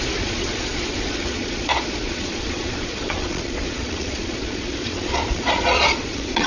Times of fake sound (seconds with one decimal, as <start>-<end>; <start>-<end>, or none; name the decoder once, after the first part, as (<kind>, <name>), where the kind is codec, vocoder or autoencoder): 0.0-6.5 (vocoder, Vocos)